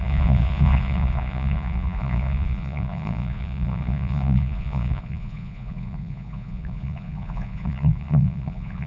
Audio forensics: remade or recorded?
remade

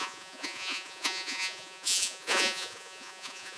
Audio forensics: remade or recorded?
remade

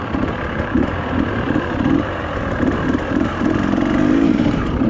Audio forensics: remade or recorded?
remade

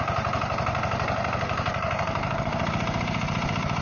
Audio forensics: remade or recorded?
remade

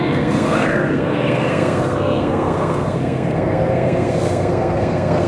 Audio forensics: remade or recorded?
remade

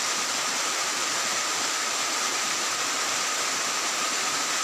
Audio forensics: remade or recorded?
remade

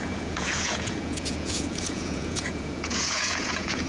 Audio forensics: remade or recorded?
remade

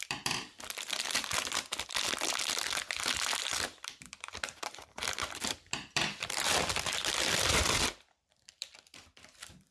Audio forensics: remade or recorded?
remade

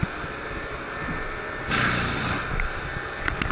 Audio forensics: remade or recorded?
recorded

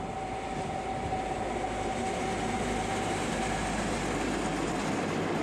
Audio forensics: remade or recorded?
recorded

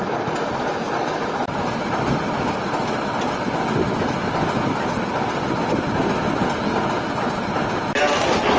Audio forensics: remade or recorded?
recorded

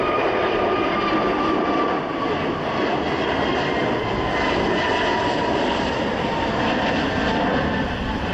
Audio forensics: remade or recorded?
recorded